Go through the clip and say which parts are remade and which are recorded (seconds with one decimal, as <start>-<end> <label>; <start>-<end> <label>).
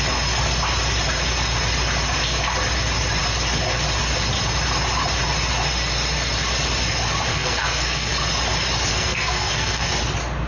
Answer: 0.0-7.3 recorded; 7.3-8.1 remade; 8.1-8.9 recorded; 8.9-9.9 remade; 9.9-10.5 recorded